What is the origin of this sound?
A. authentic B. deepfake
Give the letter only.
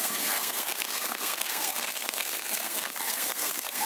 B